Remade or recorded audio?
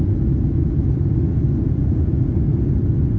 remade